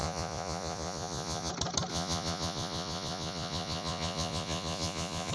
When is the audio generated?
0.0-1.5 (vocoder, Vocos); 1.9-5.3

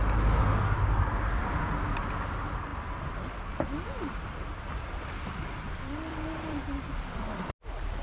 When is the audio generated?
none

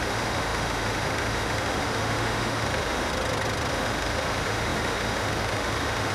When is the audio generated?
0.0-3.1 (autoencoder, DAC-VAE); 3.7-6.1

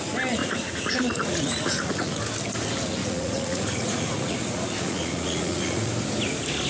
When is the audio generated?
0.4-2.2 (vocoder, Vocos); 3.0-5.9

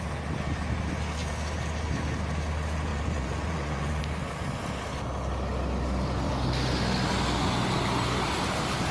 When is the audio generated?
2.9-4.0 (vocoder, Vocos)